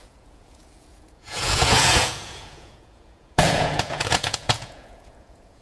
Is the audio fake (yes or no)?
yes